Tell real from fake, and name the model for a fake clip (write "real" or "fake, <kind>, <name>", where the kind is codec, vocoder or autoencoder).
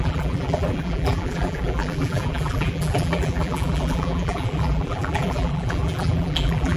fake, vocoder, BigVGAN v2